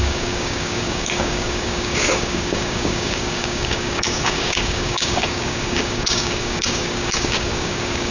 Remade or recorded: remade